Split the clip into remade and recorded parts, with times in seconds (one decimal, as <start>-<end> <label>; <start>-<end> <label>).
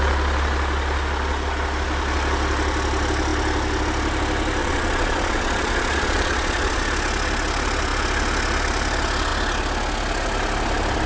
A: 0.0-4.6 recorded; 4.6-6.8 remade; 6.8-11.1 recorded